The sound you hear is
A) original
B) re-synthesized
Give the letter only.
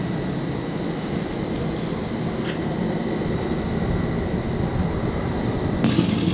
A